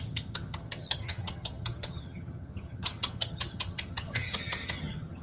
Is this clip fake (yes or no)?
yes